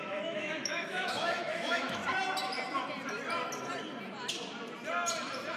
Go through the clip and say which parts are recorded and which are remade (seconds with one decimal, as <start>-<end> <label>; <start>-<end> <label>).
0.0-2.0 remade; 2.0-5.6 recorded